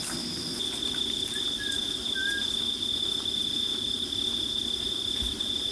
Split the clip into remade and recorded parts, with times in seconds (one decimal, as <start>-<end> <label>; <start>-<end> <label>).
0.0-5.7 recorded